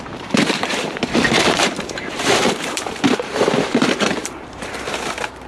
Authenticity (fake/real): fake